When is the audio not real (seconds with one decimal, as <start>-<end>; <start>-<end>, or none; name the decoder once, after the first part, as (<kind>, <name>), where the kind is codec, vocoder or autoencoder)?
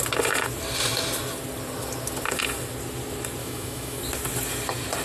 3.4-4.0 (autoencoder, DAC-VAE)